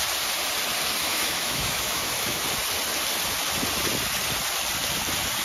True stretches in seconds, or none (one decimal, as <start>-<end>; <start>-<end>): 0.0-1.0; 2.4-5.4